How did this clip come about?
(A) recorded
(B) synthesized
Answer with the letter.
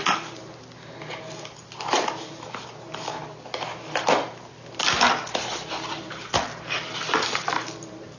A